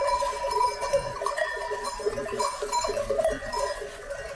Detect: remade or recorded remade